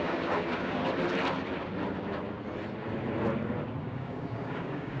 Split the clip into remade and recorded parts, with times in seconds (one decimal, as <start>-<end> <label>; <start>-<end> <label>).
0.0-0.8 remade; 0.8-3.8 recorded; 3.8-5.0 remade

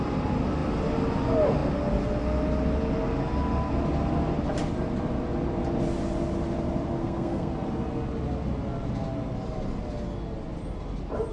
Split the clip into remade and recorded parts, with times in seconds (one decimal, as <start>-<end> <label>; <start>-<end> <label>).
0.0-7.0 recorded; 7.0-7.5 remade; 7.5-11.3 recorded

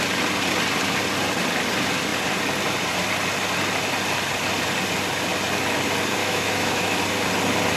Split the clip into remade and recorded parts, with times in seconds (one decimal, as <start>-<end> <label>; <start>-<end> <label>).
0.0-6.2 recorded; 6.2-7.0 remade; 7.0-7.8 recorded

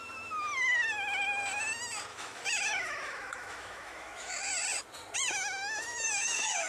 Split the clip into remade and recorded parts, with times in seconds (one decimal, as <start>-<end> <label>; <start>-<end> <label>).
0.0-2.1 recorded; 2.1-4.3 remade; 4.3-5.3 recorded; 5.3-6.7 remade

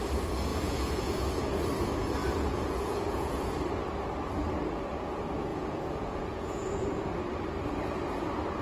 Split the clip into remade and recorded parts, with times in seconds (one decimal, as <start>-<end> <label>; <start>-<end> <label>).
0.0-0.5 recorded; 0.5-1.6 remade; 1.6-2.2 recorded; 2.2-3.5 remade; 3.5-5.5 recorded; 5.5-7.2 remade; 7.2-8.6 recorded